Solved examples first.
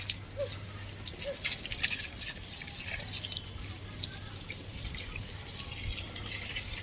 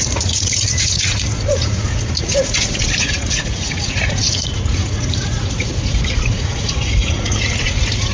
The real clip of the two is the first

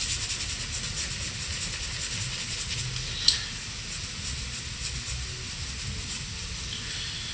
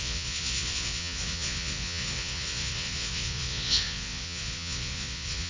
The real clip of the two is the first